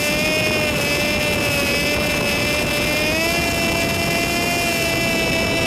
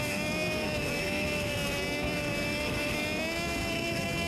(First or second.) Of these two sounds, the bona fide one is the first